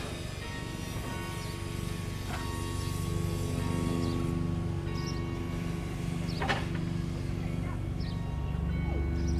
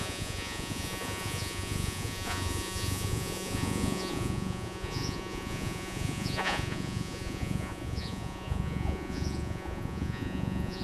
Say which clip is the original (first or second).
first